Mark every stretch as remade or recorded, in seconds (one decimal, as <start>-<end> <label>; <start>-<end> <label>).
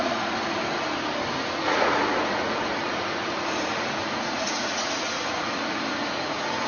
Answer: 0.0-0.6 remade; 0.6-1.3 recorded; 1.3-6.7 remade